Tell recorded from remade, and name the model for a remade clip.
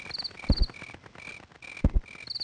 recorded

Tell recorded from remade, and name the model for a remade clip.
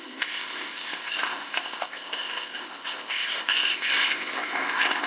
remade, codec, ZipCodec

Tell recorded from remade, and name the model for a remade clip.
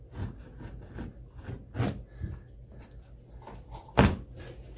recorded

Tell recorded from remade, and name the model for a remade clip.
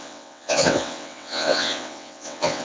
remade, vocoder, WaveNeXt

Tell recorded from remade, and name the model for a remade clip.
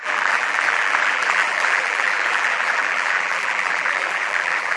remade, vocoder, BigVGAN v2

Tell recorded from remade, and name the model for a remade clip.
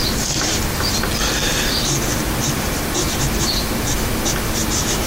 recorded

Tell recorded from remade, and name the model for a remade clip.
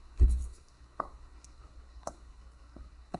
remade, codec, SNAC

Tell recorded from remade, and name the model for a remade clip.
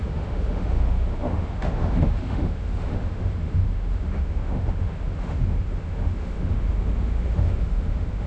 remade, autoencoder, DAC-VAE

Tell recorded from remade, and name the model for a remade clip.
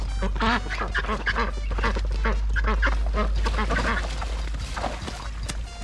recorded